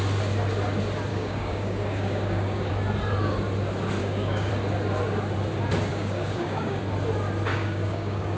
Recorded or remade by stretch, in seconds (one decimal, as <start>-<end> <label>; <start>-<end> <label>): 0.0-1.1 recorded; 1.1-2.7 remade; 2.7-4.0 recorded; 4.0-4.5 remade; 4.5-5.9 recorded; 5.9-6.8 remade; 6.8-7.5 recorded; 7.5-8.4 remade